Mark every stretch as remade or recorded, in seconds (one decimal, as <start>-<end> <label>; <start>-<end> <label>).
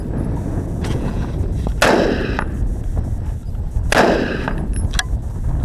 0.0-0.5 recorded; 0.5-1.2 remade; 1.2-5.6 recorded